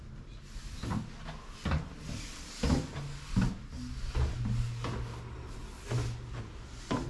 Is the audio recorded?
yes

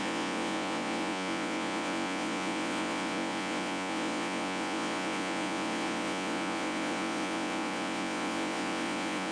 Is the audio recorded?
no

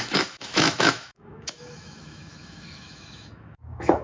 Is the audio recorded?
no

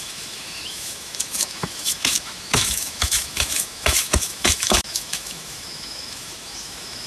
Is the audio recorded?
no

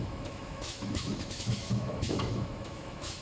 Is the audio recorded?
no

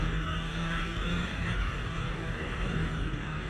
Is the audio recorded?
no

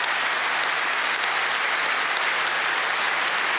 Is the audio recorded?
yes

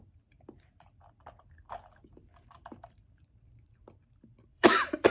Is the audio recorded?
no